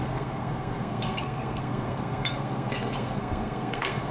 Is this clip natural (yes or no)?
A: no